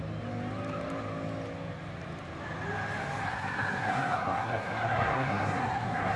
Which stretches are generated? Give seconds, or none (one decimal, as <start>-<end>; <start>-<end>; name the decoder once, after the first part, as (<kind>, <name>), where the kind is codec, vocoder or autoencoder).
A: 3.2-6.2 (codec, SNAC)